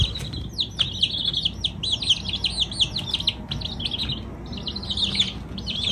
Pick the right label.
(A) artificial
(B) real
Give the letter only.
B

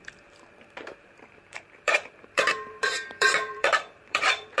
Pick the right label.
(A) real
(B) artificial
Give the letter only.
B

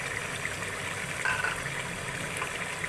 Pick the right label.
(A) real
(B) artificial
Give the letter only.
A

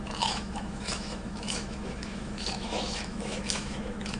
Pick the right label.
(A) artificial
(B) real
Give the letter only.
A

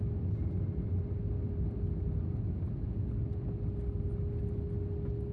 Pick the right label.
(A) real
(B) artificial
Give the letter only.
A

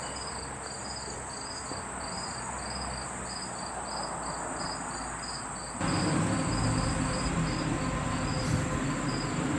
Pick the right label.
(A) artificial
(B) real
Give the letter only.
B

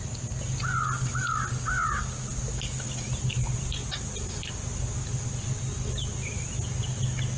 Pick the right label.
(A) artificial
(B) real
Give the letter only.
B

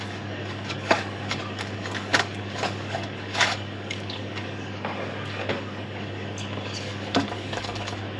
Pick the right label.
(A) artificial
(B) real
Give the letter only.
A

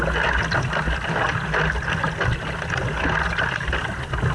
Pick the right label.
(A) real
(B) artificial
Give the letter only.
A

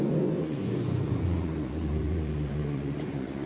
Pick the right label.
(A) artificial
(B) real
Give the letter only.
A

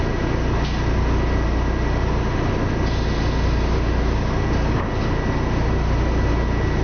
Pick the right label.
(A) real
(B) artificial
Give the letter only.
A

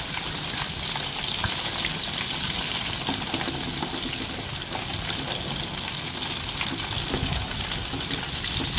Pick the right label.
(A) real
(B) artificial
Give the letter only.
A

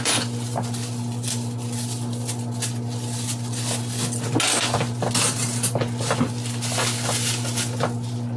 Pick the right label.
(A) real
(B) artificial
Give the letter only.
A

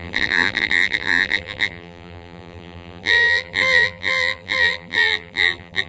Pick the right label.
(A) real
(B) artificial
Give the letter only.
B